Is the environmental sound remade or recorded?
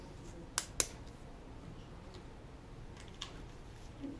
recorded